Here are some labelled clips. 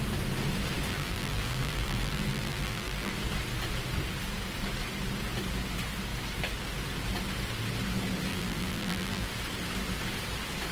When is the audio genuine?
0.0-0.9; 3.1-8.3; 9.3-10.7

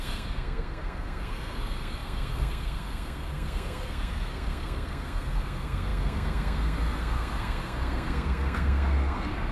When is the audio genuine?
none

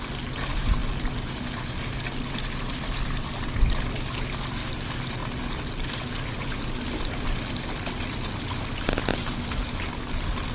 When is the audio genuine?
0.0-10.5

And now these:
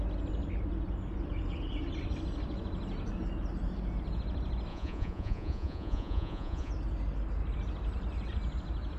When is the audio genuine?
0.0-4.7; 6.7-9.0

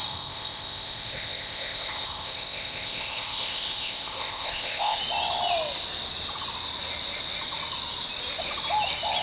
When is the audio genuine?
5.0-9.2

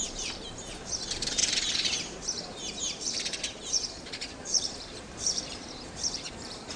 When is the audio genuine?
none